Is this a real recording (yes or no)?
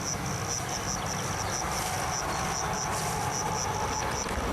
yes